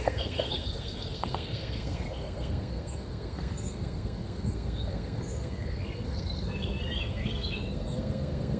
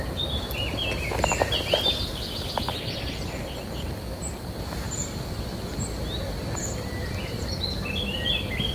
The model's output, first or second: first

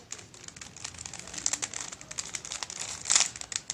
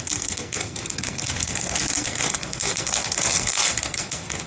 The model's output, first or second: second